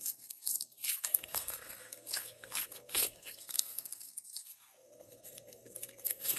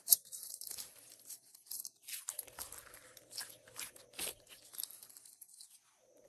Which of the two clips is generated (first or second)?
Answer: first